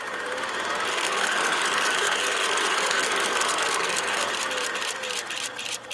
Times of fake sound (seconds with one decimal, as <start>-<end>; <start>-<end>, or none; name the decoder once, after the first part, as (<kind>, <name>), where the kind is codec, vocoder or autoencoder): 0.9-4.3 (codec, SNAC)